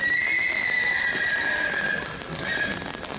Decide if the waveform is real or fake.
real